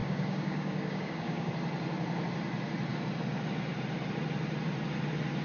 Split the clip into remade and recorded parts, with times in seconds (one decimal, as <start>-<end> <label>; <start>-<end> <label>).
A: 0.0-1.5 remade; 1.5-5.4 recorded